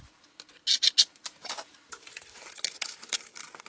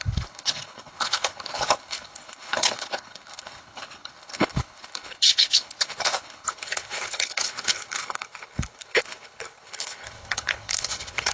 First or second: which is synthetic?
second